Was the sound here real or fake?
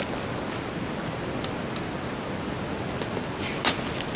real